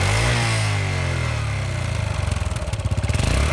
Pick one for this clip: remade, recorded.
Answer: recorded